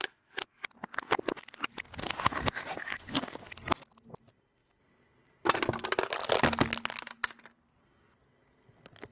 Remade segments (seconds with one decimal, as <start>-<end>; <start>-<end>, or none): 2.0-3.5